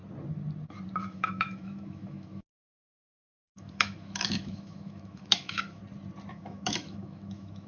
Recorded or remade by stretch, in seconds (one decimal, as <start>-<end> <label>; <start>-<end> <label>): 0.0-1.0 recorded; 1.0-5.8 remade; 5.8-6.3 recorded; 6.3-7.7 remade